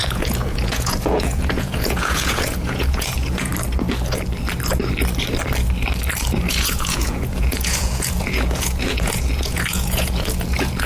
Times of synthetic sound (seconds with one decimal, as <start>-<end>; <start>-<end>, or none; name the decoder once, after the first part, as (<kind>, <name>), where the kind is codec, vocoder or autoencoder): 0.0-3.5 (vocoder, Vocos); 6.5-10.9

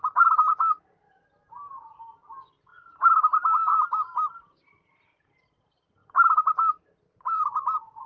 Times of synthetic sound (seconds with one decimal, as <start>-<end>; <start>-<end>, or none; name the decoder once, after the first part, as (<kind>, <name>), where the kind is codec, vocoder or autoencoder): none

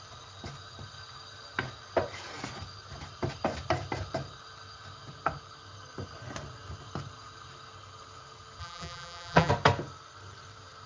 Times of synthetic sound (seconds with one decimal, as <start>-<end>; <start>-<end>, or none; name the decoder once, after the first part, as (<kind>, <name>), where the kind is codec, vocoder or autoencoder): 8.6-9.5 (vocoder, BigVGAN v2)

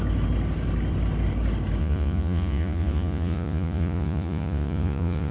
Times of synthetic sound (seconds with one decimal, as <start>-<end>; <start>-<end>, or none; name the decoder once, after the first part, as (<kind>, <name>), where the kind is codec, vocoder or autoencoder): 1.8-5.3 (vocoder, Vocos)

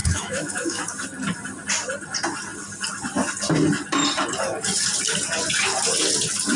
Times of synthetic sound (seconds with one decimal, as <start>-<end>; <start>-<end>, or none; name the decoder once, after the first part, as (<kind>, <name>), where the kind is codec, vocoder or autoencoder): 0.0-0.8 (autoencoder, DAC-VAE)

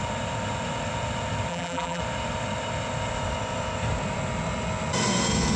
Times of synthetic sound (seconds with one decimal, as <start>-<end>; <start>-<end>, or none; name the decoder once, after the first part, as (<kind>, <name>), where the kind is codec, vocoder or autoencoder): 1.5-2.0 (vocoder, BigVGAN v2)